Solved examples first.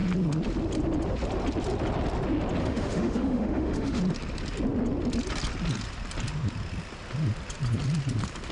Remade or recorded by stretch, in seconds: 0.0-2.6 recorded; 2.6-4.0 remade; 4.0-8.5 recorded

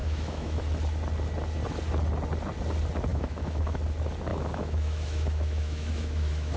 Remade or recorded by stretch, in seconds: 0.0-0.6 remade; 0.6-3.1 recorded; 3.1-3.8 remade; 3.8-4.3 recorded; 4.3-6.6 remade

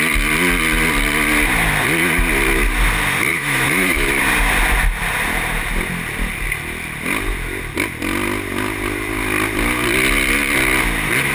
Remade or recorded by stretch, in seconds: 0.0-3.3 recorded; 3.3-4.2 remade; 4.2-11.3 recorded

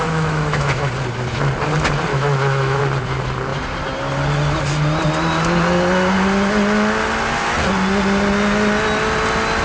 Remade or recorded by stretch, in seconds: 0.0-0.9 remade; 0.9-2.1 recorded; 2.1-2.8 remade; 2.8-9.6 recorded

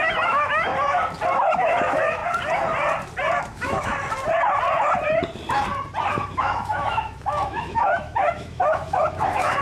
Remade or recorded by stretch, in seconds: 0.0-0.7 remade; 0.7-1.3 recorded; 1.3-2.2 remade; 2.2-3.4 recorded; 3.4-3.9 remade; 3.9-6.1 recorded; 6.1-9.6 remade